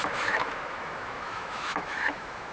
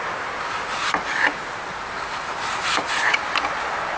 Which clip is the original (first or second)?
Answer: second